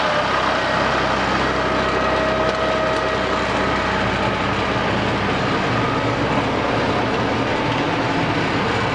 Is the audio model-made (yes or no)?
no